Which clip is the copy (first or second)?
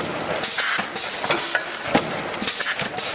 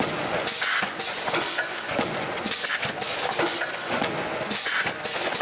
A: second